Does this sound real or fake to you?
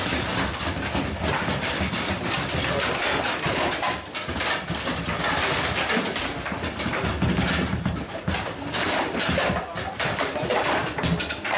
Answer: real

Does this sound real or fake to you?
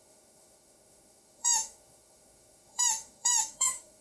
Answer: fake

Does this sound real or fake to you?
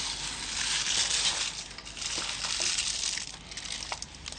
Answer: real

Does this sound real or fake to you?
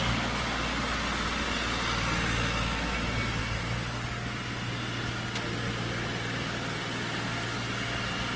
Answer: real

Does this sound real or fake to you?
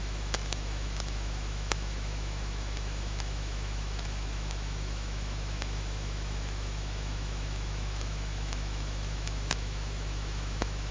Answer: fake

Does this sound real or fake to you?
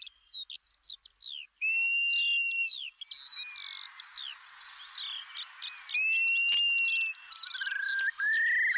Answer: real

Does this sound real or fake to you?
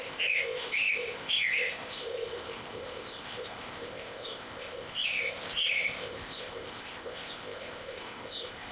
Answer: fake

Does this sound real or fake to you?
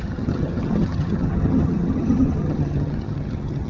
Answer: fake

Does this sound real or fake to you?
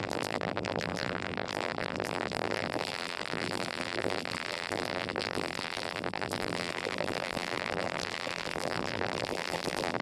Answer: fake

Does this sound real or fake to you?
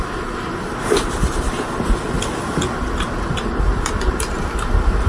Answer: real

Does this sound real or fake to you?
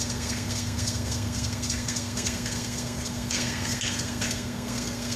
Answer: fake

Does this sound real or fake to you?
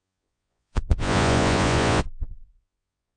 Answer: fake